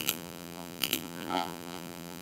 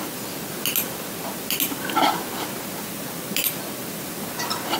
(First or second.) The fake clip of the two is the first